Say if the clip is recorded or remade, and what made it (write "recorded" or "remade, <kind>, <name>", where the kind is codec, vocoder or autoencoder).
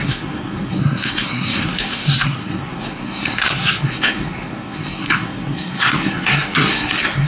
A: remade, codec, SNAC